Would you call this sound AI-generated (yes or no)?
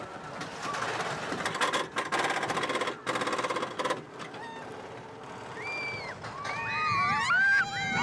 no